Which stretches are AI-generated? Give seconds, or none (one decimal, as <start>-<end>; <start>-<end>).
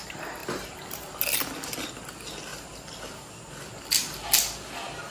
2.5-3.0